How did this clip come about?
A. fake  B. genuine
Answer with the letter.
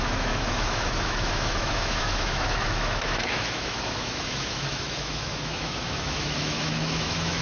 A